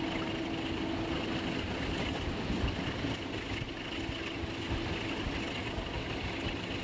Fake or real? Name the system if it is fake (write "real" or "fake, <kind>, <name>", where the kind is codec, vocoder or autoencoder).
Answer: real